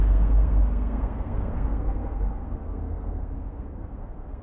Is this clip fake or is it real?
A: fake